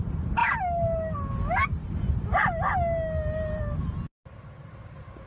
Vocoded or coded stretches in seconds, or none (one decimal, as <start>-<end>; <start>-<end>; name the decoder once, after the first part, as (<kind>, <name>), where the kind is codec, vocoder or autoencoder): none